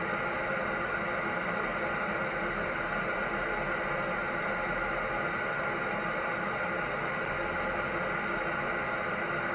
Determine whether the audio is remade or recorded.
recorded